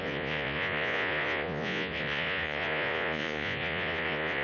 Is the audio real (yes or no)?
no